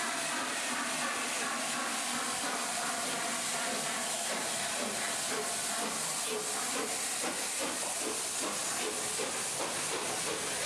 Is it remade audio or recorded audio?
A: recorded